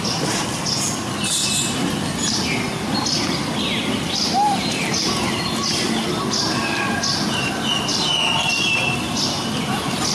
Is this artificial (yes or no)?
no